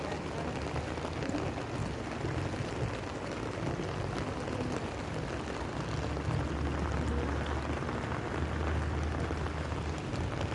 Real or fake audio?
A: real